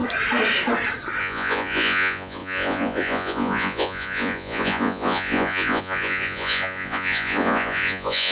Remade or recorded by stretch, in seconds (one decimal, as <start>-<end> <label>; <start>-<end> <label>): 0.0-1.2 recorded; 1.2-8.3 remade

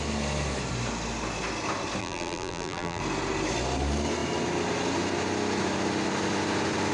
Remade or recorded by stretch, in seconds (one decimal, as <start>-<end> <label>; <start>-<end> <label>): 0.0-2.0 recorded; 2.0-3.0 remade; 3.0-6.9 recorded

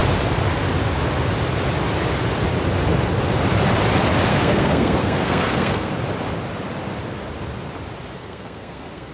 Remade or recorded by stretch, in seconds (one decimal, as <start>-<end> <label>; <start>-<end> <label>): 0.0-4.3 recorded; 4.3-5.9 remade; 5.9-8.2 recorded; 8.2-9.1 remade

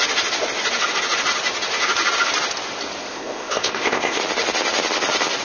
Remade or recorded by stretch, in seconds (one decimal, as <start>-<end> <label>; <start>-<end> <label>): 0.0-3.0 recorded; 3.0-4.2 remade; 4.2-5.4 recorded